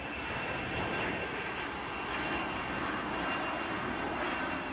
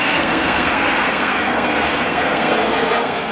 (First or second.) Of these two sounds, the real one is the first